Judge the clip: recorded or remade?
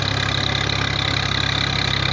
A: recorded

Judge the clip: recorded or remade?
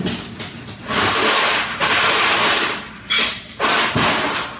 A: recorded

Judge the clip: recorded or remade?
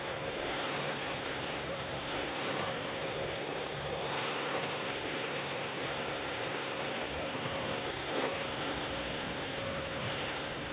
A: remade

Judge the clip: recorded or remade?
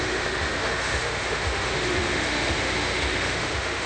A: remade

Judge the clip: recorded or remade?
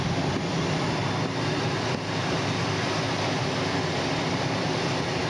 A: recorded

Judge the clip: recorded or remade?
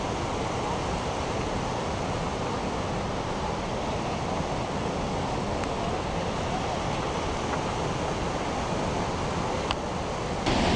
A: recorded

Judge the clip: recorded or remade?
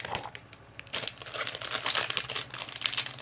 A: remade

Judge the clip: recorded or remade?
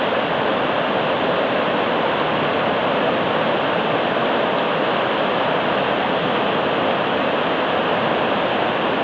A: recorded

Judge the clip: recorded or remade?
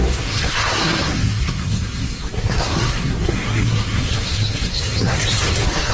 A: remade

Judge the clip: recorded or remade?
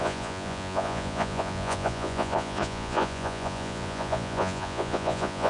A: remade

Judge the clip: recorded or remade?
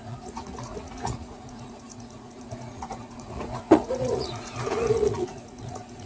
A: remade